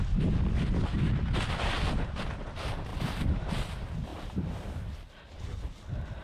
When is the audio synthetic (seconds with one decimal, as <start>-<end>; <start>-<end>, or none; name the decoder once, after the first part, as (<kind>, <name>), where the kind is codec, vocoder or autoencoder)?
2.9-3.5 (vocoder, BigVGAN v2); 4.1-4.7